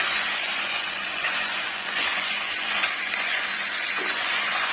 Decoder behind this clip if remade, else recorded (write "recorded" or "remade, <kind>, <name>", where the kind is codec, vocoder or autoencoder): remade, vocoder, Vocos